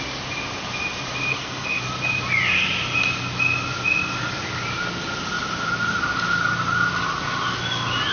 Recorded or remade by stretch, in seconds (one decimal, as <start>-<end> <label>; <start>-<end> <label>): 0.0-1.3 recorded; 1.3-1.8 remade; 1.8-8.1 recorded